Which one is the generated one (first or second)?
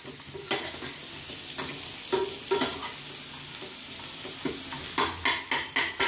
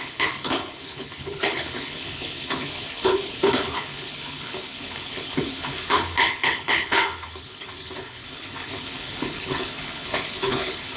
second